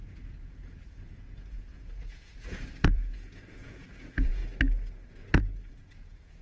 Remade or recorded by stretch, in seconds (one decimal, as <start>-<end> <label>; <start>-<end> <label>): 0.0-4.4 remade; 4.4-5.1 recorded; 5.1-6.4 remade